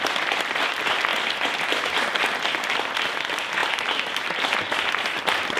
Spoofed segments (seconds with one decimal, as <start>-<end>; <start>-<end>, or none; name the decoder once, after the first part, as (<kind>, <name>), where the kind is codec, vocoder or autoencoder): 1.1-1.9 (vocoder, BigVGAN v2); 3.6-5.6